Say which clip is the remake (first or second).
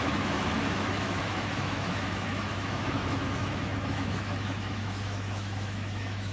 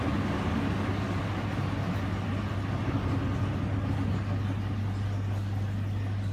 first